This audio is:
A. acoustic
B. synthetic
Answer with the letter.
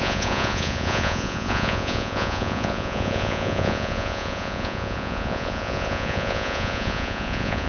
B